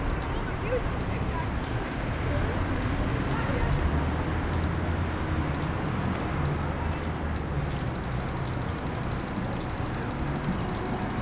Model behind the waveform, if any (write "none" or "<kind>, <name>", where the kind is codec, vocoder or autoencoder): none